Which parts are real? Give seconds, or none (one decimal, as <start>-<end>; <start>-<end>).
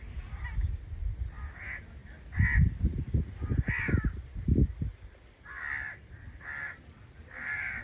0.0-7.8